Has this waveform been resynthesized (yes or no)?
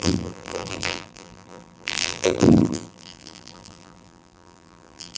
yes